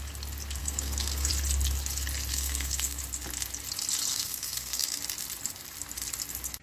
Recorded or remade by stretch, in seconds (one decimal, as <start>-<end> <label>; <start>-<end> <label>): 0.0-0.6 recorded; 0.6-1.3 remade; 1.3-2.3 recorded; 2.3-3.0 remade; 3.0-4.1 recorded; 4.1-5.0 remade; 5.0-6.6 recorded